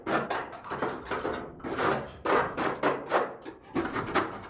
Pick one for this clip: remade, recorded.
remade